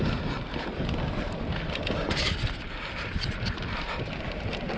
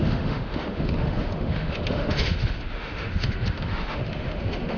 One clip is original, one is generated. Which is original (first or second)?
first